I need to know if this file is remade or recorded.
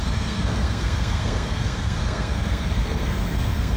remade